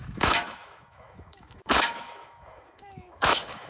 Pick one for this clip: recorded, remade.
remade